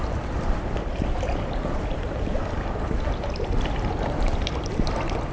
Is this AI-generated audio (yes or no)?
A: yes